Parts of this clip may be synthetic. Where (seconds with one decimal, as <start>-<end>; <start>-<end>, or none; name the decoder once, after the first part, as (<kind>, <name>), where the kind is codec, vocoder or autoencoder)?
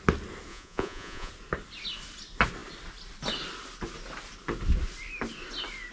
0.5-1.3 (vocoder, Vocos)